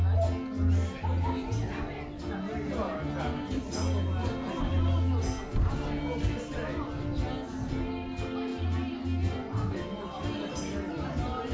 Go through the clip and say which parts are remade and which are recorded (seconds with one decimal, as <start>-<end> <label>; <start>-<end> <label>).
0.0-11.5 recorded

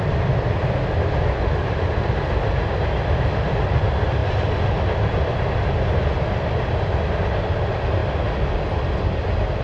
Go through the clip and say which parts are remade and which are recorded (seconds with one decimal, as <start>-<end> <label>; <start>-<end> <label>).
0.0-9.6 recorded